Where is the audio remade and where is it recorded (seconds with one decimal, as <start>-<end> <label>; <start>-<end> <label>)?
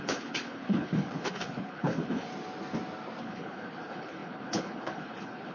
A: 0.0-2.3 remade; 2.3-3.2 recorded; 3.2-5.5 remade